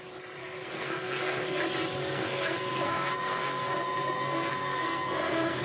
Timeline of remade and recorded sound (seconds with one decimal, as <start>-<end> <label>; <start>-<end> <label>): 0.0-0.4 recorded; 0.4-1.6 remade; 1.6-2.0 recorded; 2.0-5.6 remade